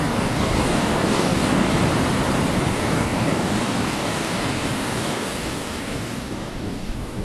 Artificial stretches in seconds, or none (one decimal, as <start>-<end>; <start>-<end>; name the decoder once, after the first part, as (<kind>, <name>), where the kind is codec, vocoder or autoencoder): 0.0-1.7 (codec, DAC); 2.7-7.2